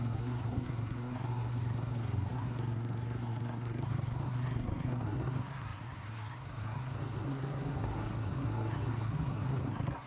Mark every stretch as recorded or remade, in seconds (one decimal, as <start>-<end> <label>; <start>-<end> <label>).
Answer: 0.0-10.1 remade